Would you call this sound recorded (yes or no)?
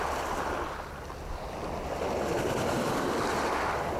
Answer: yes